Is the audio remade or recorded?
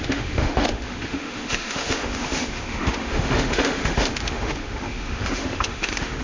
remade